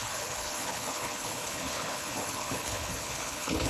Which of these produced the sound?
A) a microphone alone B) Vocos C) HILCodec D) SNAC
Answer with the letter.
C